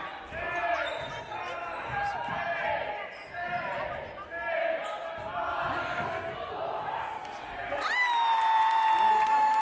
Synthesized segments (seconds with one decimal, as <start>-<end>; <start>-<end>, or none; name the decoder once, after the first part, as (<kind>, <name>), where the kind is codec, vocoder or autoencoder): 5.8-6.5 (codec, SNAC)

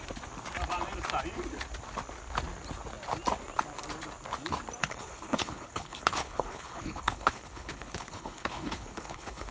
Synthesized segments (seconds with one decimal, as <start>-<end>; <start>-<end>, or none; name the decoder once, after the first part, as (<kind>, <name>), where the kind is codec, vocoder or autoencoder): 4.8-9.5 (codec, HILCodec)